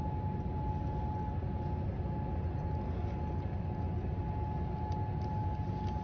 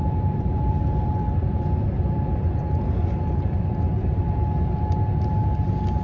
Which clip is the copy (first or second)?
second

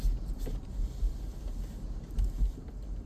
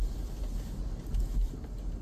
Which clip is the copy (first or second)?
first